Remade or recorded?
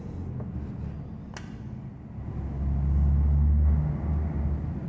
recorded